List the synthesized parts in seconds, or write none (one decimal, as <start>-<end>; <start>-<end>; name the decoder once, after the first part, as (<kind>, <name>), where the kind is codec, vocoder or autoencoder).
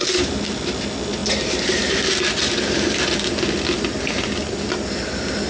none